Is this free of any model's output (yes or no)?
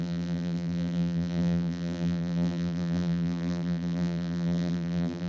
no